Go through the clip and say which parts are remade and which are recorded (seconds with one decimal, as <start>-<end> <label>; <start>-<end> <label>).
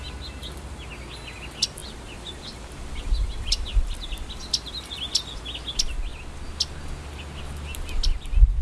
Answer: 0.0-1.8 recorded; 1.8-5.4 remade; 5.4-8.6 recorded